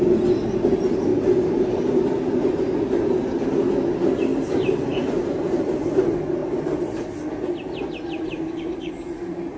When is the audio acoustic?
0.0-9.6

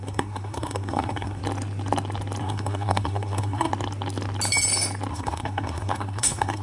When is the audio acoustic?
1.4-2.4; 3.7-5.1

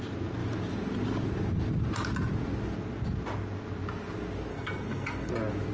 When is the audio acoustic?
0.0-4.5; 5.3-5.7

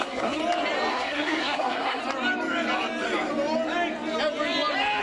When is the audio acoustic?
0.4-0.9; 2.0-5.0

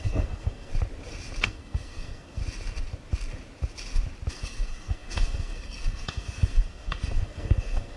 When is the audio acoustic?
0.7-1.4; 2.4-4.3

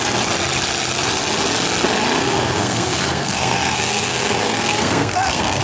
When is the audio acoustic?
0.0-2.2

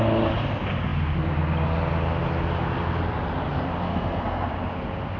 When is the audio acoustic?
0.0-3.9; 4.5-5.2

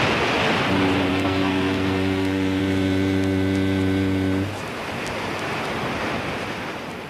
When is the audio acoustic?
0.0-1.1; 2.6-7.1